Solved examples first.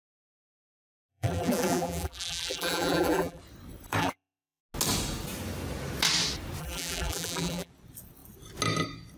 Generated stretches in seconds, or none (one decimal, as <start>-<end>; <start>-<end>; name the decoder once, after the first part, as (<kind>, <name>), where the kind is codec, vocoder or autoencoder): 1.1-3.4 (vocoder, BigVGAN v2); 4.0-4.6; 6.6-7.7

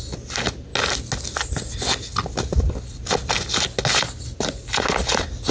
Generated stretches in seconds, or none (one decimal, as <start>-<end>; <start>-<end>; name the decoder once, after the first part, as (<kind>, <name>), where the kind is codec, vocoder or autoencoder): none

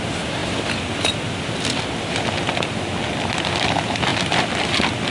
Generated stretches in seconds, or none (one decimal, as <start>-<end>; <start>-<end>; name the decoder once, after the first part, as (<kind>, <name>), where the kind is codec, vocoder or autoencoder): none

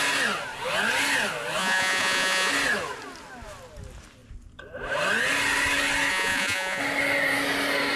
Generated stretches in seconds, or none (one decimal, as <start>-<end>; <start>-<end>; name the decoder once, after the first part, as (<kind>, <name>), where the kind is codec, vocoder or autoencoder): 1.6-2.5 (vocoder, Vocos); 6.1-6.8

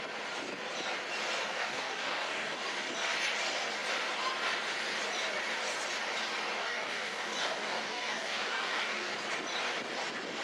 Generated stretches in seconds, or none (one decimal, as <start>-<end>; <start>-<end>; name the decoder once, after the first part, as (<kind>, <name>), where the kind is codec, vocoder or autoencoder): 1.4-2.6 (codec, DAC); 6.6-9.1

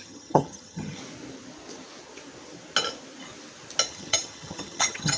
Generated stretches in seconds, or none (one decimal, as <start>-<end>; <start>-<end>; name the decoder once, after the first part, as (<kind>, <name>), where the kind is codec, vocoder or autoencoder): 0.0-1.0 (vocoder, HiFi-GAN); 3.9-5.2